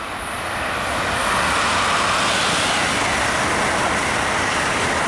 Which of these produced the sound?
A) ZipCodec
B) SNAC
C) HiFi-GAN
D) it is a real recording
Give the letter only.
D